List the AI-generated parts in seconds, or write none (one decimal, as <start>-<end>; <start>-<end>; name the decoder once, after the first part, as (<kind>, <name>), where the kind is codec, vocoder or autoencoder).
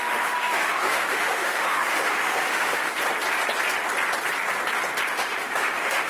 0.0-2.9 (autoencoder, DAC-VAE); 5.1-6.1